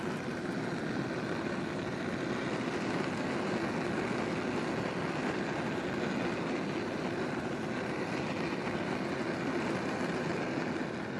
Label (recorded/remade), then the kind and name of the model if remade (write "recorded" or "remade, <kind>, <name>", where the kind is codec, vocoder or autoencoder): recorded